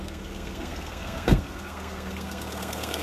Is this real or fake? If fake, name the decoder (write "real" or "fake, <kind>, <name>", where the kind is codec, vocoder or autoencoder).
fake, codec, SNAC